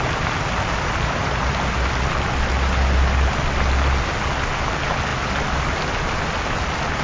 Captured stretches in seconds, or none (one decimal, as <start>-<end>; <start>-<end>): 0.0-7.0

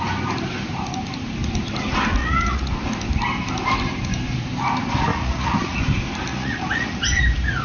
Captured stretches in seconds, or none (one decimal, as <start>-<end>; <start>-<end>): 0.0-2.2; 2.7-5.1; 5.8-6.3; 7.0-7.6

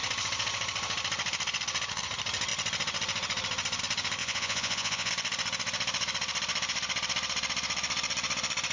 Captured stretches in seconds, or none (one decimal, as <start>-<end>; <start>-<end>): 0.0-4.2; 5.1-8.7

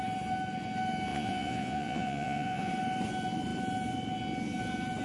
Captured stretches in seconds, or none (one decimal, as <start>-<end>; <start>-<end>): 0.0-1.1; 2.7-5.0

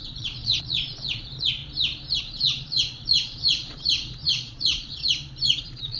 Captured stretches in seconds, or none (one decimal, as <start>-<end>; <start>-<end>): 1.6-2.2; 5.0-5.6